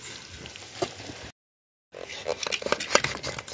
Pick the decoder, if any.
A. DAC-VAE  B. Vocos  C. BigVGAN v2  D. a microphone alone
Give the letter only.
D